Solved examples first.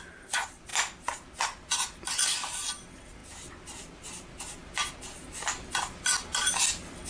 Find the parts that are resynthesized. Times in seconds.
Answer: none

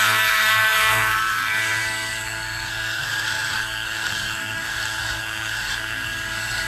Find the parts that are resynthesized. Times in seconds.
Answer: 0.0-6.7 (codec, SNAC)